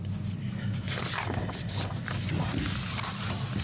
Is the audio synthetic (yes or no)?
no